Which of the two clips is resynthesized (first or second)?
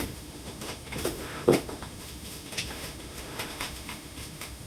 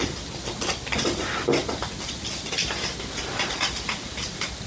first